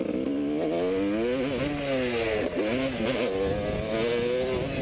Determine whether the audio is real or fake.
real